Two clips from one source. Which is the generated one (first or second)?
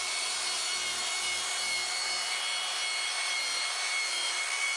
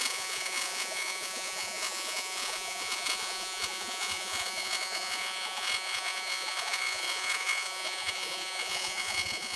second